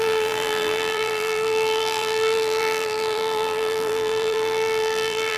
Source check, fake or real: fake